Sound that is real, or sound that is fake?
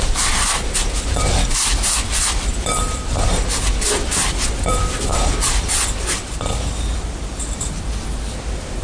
fake